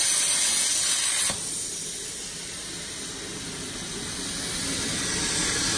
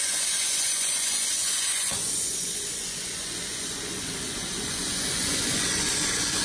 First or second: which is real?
first